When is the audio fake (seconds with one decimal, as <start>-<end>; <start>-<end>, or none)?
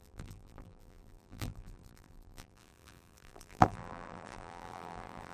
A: 0.0-5.3